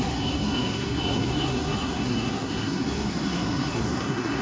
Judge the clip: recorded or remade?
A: remade